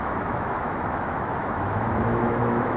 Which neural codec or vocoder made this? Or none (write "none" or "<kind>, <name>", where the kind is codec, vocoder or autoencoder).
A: autoencoder, DAC-VAE